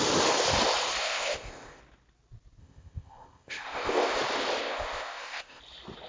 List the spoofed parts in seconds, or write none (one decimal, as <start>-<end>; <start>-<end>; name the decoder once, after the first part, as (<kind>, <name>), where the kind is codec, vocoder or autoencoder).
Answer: 1.0-1.8 (codec, ZipCodec); 2.6-4.1; 4.6-5.6